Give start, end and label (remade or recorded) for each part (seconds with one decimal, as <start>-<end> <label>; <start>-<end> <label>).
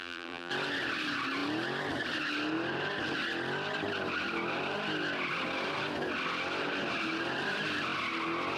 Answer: 0.0-0.5 remade; 0.5-8.6 recorded